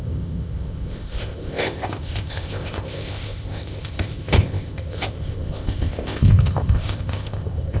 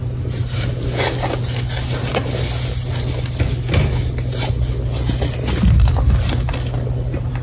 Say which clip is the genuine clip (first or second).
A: second